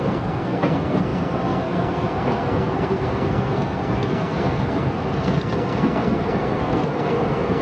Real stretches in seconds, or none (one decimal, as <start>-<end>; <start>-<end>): none